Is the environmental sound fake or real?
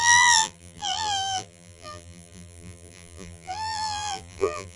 fake